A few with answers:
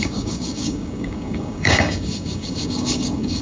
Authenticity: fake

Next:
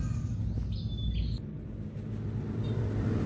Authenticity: real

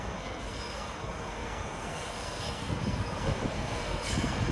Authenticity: fake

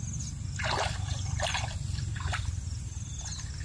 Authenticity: real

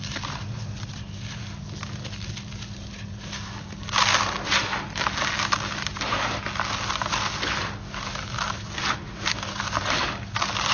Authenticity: real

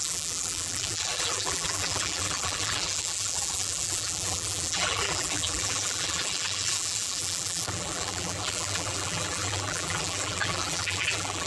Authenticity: fake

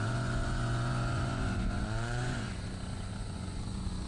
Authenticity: fake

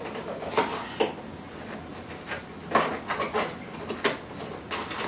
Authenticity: real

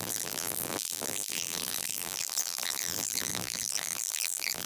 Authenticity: fake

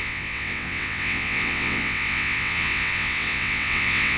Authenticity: fake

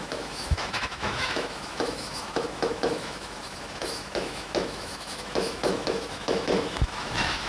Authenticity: fake